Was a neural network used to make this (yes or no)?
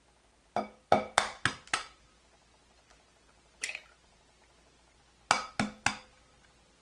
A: no